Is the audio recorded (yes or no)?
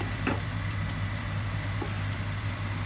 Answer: no